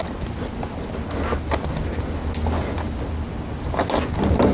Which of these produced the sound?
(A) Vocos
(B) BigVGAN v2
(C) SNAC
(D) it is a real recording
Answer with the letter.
D